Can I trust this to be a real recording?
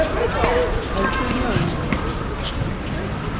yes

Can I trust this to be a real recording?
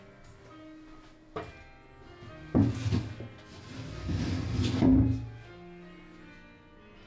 yes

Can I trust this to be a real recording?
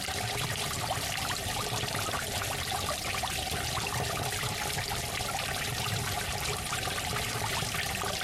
no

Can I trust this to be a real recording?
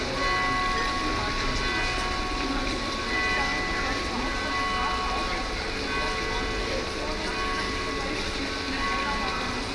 yes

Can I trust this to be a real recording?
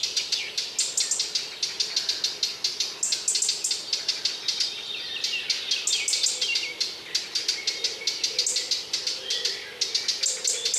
yes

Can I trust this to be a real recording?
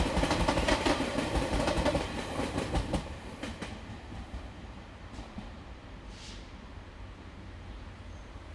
no